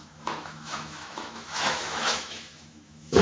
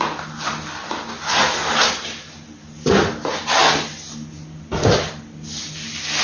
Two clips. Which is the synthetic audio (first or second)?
first